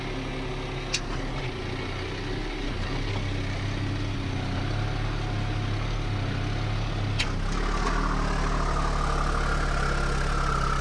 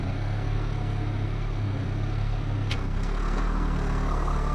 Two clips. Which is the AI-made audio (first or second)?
second